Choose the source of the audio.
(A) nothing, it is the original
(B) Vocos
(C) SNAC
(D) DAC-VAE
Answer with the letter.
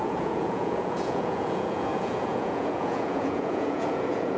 B